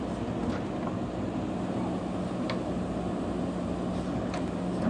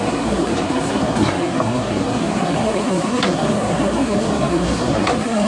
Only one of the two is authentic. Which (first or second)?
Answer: first